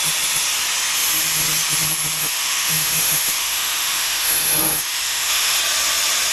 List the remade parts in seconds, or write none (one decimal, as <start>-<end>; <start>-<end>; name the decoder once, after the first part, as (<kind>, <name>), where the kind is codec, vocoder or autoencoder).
2.2-5.6 (autoencoder, DAC-VAE)